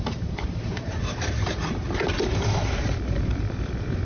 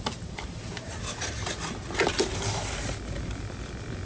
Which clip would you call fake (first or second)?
first